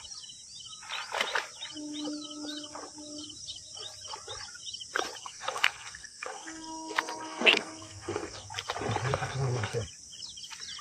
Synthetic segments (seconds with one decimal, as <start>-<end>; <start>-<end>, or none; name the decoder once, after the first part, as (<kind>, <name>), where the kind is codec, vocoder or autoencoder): 5.2-8.5 (codec, SNAC); 9.1-9.8

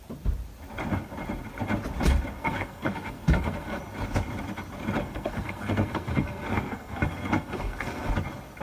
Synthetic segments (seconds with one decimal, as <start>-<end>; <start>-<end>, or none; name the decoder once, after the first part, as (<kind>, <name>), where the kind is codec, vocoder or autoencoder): 2.4-3.8 (codec, SNAC); 5.0-8.1

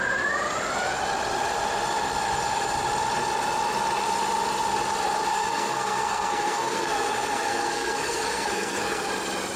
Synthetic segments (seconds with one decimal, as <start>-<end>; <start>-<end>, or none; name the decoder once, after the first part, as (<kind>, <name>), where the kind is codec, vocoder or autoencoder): 5.3-9.1 (codec, SNAC)

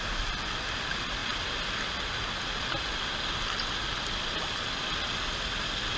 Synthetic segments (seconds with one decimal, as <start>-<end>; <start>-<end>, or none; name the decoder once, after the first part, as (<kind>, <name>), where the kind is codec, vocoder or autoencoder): none